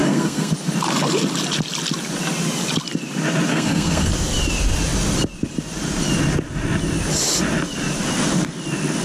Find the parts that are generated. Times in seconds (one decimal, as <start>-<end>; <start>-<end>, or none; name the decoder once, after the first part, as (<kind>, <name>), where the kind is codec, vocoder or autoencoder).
0.0-0.5 (codec, SNAC); 3.5-4.1